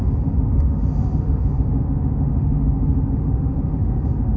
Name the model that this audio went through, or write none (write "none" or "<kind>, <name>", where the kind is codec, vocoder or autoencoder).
autoencoder, DAC-VAE